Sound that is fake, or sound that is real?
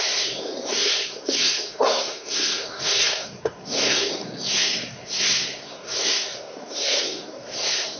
fake